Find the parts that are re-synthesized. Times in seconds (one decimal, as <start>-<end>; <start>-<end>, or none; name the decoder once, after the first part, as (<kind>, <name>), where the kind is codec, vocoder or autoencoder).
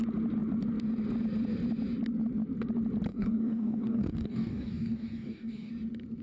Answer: 3.1-5.7 (codec, DAC)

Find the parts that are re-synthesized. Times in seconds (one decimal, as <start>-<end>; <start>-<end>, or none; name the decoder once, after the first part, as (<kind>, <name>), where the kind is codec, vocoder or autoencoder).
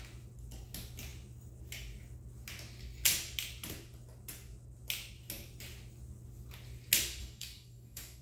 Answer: 7.2-8.2 (codec, DAC)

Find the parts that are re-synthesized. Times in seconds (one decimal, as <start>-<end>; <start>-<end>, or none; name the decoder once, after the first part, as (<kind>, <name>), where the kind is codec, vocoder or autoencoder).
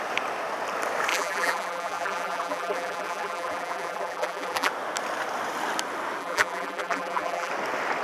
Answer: 1.1-4.7 (vocoder, BigVGAN v2); 6.2-7.5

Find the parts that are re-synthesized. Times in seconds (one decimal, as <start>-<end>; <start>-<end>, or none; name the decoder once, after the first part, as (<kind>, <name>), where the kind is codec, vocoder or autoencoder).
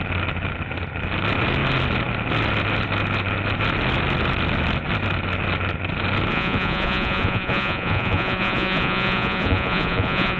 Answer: 6.3-10.4 (vocoder, Vocos)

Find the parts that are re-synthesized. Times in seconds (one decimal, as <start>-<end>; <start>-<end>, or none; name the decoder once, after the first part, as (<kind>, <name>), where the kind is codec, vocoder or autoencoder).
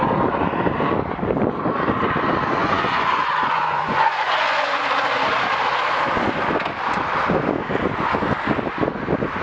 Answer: 2.6-4.8 (vocoder, Vocos)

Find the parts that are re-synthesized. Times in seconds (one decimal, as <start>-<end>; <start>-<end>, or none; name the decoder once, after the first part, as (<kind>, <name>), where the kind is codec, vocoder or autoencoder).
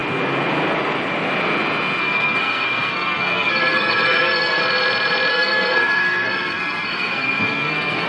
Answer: 2.0-4.6 (codec, SNAC); 5.3-8.1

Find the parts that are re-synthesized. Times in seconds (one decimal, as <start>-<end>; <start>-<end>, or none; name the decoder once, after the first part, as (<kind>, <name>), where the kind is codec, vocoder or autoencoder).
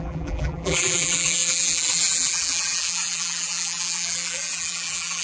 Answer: 0.0-5.2 (vocoder, BigVGAN v2)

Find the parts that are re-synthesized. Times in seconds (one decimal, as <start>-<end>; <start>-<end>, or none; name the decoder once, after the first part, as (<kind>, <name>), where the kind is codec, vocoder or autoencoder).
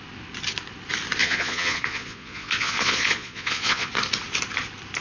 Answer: 1.2-3.9 (vocoder, Vocos)